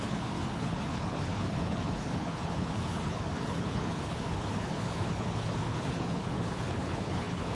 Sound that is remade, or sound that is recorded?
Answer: remade